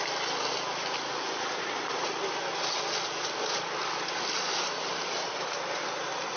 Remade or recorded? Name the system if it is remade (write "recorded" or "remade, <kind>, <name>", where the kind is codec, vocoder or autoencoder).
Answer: recorded